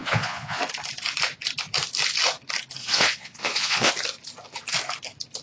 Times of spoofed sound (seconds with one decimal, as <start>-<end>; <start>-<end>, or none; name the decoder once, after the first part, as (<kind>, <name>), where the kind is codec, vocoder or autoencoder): 0.0-0.6 (vocoder, Vocos); 2.8-3.9